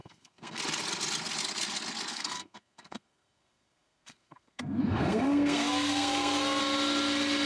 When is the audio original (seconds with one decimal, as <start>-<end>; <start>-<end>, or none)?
0.6-2.1; 6.6-7.5